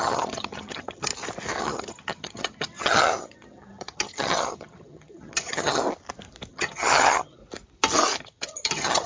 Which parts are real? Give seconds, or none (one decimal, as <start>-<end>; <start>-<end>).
1.1-1.6; 5.8-6.5; 7.4-8.2